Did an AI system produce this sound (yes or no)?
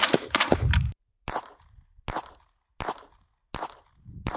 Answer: no